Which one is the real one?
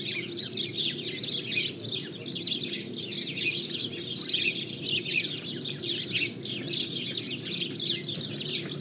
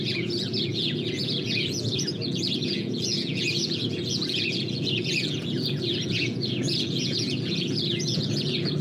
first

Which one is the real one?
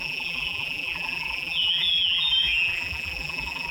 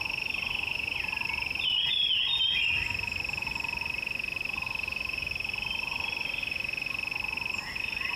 second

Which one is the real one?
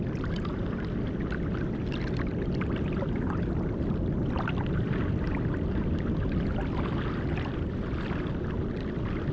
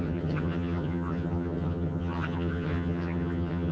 first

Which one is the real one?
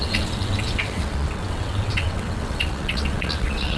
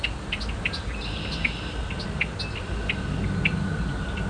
second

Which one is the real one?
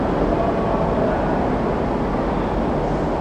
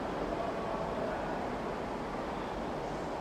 first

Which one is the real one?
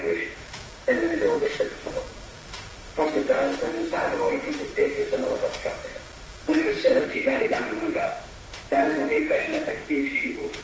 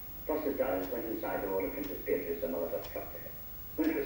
second